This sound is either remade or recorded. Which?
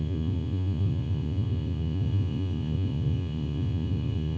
remade